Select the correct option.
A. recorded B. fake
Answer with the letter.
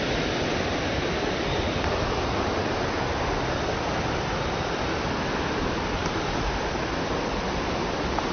A